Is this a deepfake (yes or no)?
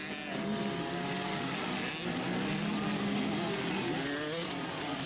no